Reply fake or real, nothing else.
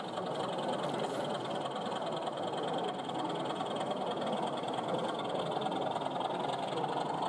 real